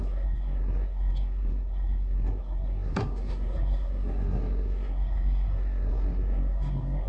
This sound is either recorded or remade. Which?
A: remade